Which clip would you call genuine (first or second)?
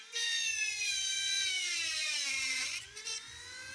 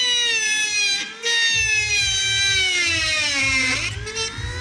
second